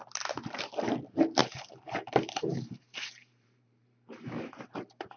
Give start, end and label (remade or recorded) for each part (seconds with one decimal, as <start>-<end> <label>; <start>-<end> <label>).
0.0-1.4 recorded; 1.4-4.5 remade; 4.5-5.2 recorded